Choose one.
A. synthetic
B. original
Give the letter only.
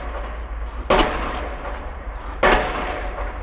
B